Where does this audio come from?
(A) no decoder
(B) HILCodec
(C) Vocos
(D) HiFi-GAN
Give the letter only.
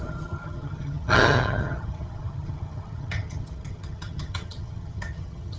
D